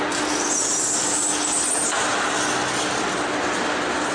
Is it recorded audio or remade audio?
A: recorded